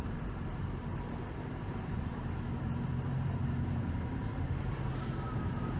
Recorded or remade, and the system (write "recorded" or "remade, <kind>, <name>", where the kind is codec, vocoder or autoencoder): remade, vocoder, BigVGAN v2